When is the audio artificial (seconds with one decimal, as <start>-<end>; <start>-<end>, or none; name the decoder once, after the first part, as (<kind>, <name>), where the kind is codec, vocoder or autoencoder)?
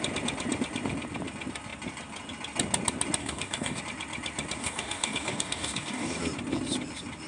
3.2-3.8 (codec, DAC); 4.6-6.2